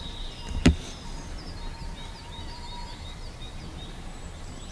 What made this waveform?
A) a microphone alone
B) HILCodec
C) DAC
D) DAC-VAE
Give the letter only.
A